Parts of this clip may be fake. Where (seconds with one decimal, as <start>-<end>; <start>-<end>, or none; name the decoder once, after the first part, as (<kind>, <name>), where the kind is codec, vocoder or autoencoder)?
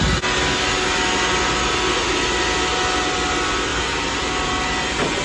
none